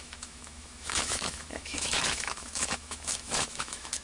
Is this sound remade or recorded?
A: remade